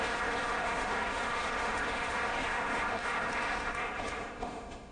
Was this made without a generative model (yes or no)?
no